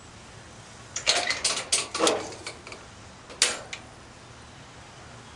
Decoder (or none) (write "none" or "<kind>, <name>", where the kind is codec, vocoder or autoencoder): none